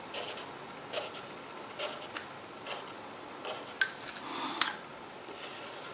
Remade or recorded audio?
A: recorded